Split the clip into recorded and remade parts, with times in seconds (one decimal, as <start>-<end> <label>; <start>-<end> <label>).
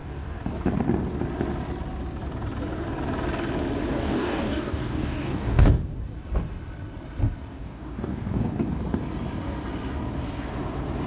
0.0-0.7 remade; 0.7-3.9 recorded; 3.9-5.8 remade; 5.8-7.5 recorded; 7.5-8.8 remade; 8.8-11.1 recorded